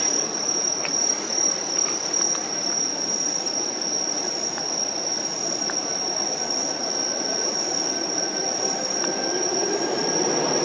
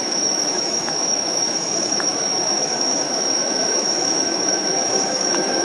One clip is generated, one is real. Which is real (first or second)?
first